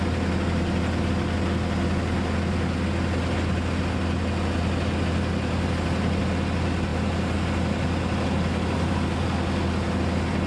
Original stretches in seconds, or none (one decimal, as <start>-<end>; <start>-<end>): 0.0-10.5